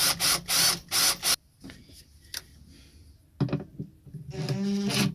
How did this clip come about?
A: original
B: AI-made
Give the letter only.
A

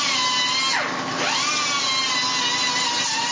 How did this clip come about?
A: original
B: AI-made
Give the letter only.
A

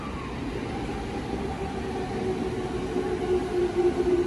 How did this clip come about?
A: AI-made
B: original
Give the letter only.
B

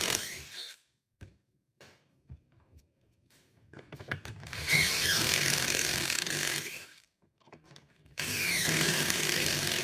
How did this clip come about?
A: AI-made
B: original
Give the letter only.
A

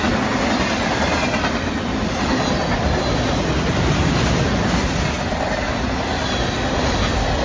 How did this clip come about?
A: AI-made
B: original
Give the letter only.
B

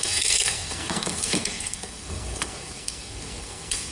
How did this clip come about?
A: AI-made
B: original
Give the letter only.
A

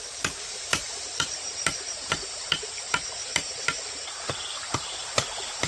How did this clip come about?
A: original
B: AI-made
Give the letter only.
B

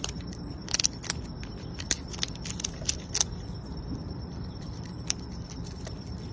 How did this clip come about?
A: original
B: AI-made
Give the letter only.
B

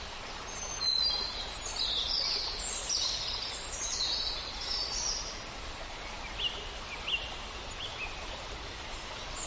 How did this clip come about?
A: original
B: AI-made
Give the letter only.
A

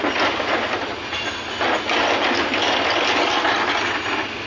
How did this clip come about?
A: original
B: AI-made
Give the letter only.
A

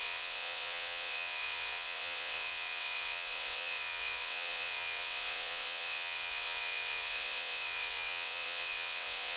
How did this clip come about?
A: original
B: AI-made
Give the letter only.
B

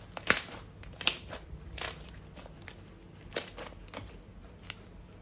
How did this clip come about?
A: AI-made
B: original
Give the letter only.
B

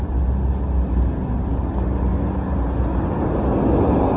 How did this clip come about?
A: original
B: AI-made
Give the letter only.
A